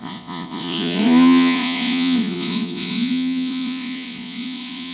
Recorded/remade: remade